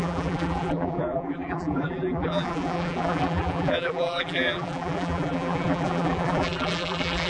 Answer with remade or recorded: remade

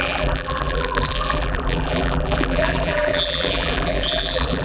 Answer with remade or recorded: remade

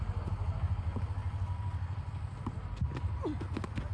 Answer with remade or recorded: recorded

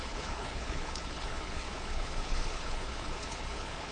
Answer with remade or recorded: remade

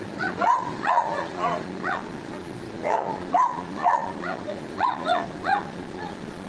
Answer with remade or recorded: remade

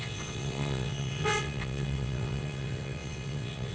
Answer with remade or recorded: remade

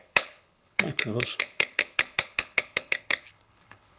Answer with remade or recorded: remade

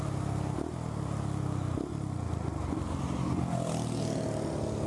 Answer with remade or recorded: recorded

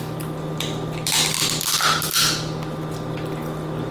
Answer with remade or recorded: recorded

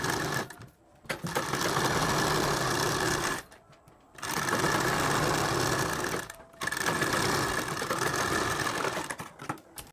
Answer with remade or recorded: recorded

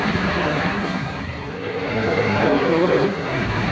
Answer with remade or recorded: remade